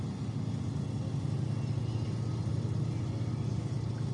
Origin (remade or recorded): recorded